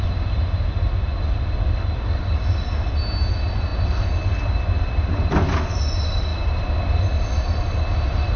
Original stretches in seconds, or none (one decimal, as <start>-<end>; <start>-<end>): 0.0-8.4